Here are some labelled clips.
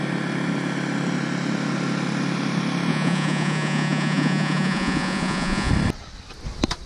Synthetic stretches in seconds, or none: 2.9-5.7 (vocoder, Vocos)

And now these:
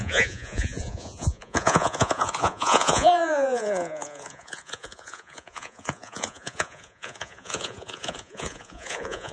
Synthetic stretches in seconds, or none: 0.0-9.3 (vocoder, Vocos)

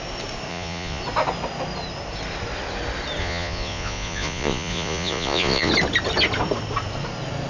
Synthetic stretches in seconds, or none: 0.5-1.0 (vocoder, Vocos); 3.2-5.7

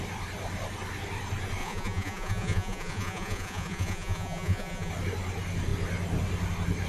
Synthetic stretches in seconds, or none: 1.6-4.9 (vocoder, Vocos)

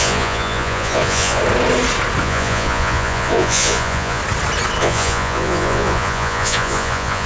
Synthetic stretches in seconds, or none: 0.0-1.4 (vocoder, Vocos); 2.2-4.2; 4.8-7.3

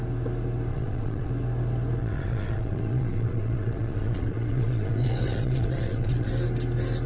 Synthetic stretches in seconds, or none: 0.7-1.3 (vocoder, Vocos); 2.0-6.3

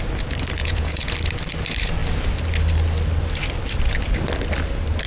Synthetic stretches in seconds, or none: 0.6-1.1 (vocoder, Vocos)

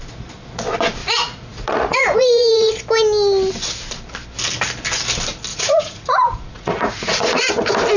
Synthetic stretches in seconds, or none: 1.0-2.7 (vocoder, Vocos); 5.5-7.5